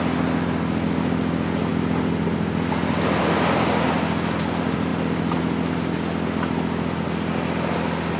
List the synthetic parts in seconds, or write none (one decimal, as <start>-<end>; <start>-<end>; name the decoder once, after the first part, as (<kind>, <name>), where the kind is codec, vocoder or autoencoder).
none